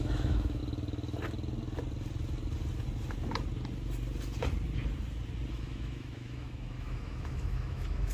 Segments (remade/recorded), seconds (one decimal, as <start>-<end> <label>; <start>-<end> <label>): 0.0-0.6 remade; 0.6-5.5 recorded; 5.5-8.1 remade